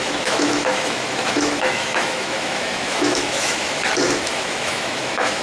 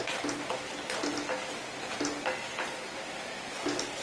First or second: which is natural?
second